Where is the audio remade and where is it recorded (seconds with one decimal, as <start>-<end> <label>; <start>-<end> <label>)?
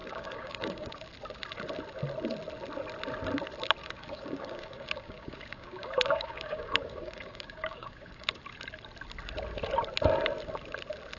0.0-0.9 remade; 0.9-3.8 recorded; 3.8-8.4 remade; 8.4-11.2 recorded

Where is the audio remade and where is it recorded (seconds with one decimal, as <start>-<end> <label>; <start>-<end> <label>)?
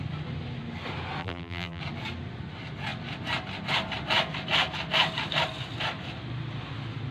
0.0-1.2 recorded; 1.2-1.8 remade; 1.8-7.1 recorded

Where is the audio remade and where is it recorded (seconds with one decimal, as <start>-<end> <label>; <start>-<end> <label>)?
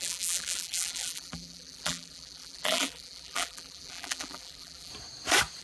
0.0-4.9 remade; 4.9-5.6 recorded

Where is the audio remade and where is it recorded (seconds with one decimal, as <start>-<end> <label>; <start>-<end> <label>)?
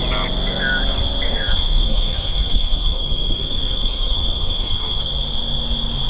0.0-1.3 recorded; 1.3-5.0 remade; 5.0-6.1 recorded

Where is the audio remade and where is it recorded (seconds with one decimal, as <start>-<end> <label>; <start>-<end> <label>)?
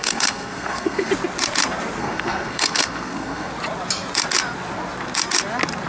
0.0-1.1 remade; 1.1-2.0 recorded; 2.0-3.5 remade; 3.5-5.9 recorded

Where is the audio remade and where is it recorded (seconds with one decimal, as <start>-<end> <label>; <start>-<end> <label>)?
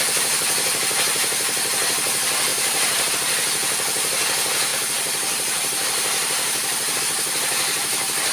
0.0-2.5 recorded; 2.5-3.1 remade; 3.1-4.7 recorded; 4.7-7.0 remade; 7.0-8.3 recorded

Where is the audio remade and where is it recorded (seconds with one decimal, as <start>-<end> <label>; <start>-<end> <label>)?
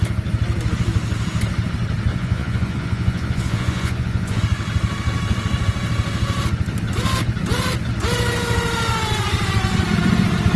0.0-2.1 recorded; 2.1-4.4 remade; 4.4-10.6 recorded